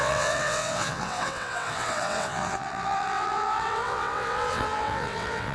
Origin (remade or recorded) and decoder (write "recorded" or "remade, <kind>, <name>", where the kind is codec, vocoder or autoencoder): remade, vocoder, WaveNeXt